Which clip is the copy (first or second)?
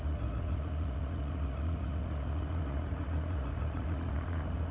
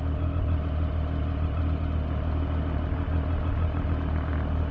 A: first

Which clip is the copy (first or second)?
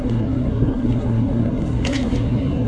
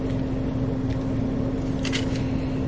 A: first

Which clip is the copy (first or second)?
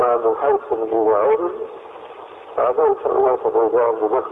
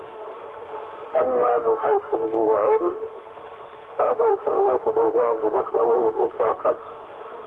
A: second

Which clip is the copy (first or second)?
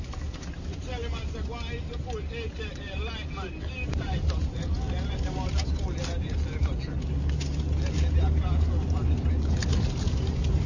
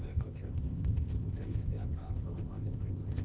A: second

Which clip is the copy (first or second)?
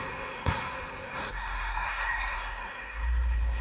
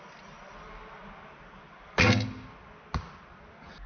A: first